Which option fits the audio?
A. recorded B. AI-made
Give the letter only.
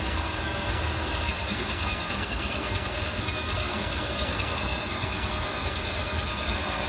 B